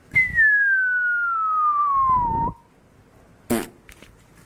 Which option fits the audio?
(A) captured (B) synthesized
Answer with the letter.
A